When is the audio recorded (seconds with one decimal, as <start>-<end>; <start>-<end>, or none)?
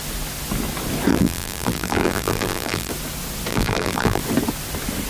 0.0-1.1; 2.9-3.5; 4.2-5.1